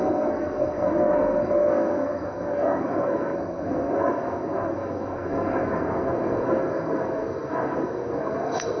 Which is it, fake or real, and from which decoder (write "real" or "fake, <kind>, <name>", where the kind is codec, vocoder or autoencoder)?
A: fake, codec, SNAC